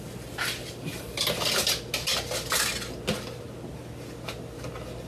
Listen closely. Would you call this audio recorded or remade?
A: recorded